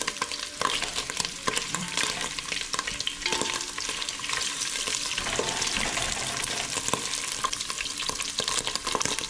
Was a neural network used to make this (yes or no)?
yes